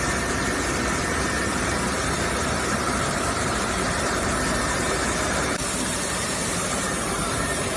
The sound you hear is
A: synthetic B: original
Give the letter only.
A